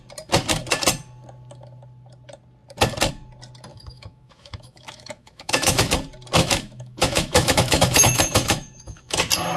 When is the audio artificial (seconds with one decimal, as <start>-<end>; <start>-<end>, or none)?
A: 3.7-5.9; 6.4-9.2